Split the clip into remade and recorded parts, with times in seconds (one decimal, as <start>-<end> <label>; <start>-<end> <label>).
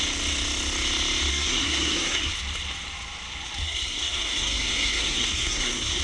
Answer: 0.0-1.3 recorded; 1.3-2.3 remade; 2.3-3.6 recorded; 3.6-6.0 remade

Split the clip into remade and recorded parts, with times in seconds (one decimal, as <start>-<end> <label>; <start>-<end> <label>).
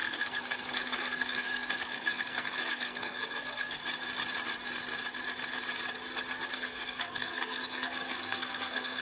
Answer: 0.0-3.8 remade; 3.8-6.5 recorded; 6.5-9.0 remade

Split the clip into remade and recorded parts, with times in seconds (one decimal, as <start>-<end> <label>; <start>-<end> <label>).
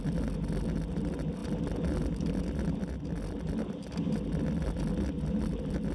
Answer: 0.0-5.9 recorded